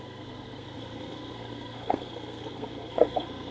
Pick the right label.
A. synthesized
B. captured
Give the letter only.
A